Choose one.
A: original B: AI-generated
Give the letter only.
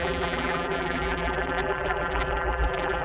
B